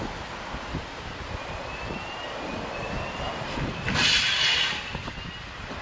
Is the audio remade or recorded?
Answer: recorded